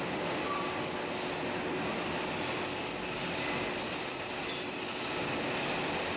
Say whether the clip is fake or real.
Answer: real